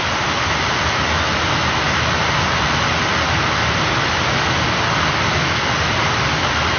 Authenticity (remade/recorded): remade